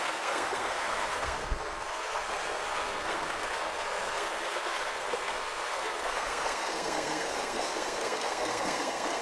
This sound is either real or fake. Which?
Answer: fake